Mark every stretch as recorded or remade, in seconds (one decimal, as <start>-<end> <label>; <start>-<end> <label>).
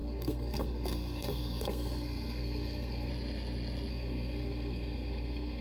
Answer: 0.0-3.1 remade; 3.1-3.9 recorded; 3.9-5.6 remade